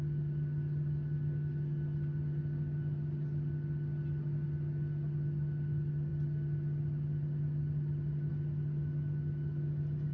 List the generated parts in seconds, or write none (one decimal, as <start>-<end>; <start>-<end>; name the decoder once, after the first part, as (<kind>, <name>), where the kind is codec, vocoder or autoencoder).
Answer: none